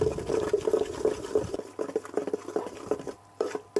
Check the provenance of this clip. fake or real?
real